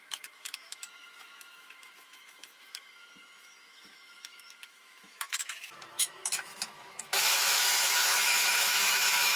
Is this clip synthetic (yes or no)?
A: yes